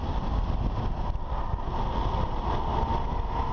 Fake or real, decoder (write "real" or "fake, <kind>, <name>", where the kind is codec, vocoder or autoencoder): real